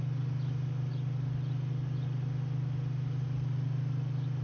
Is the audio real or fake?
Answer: real